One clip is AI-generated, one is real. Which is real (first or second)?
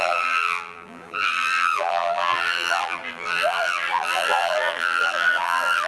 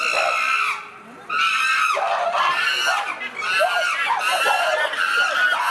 second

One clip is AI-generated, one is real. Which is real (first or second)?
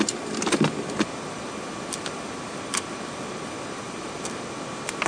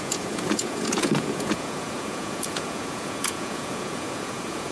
first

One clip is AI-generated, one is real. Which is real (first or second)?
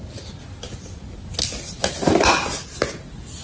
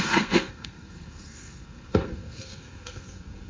first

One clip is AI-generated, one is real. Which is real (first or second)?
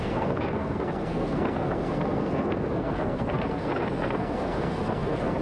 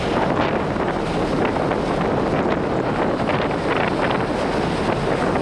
second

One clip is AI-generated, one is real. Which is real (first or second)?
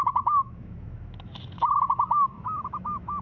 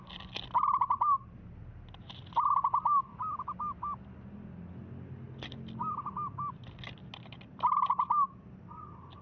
second